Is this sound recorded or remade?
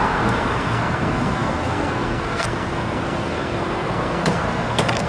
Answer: remade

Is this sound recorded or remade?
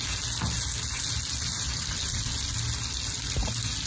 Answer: recorded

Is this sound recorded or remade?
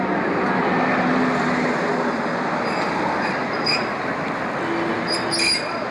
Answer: recorded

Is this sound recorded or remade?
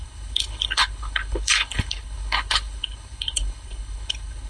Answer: remade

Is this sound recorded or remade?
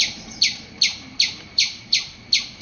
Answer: recorded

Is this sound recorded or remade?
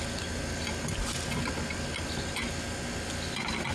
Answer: recorded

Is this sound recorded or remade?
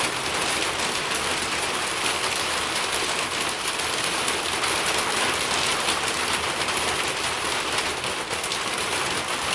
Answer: recorded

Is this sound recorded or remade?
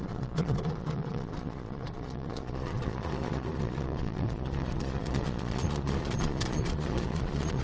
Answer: remade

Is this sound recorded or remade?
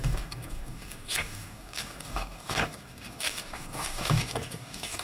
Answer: remade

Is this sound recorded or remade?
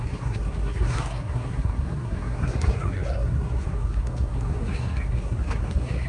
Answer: remade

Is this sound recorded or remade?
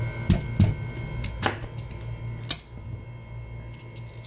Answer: recorded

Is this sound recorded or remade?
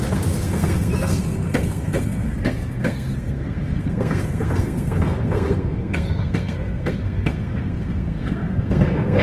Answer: remade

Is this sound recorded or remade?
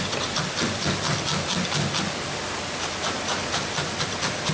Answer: recorded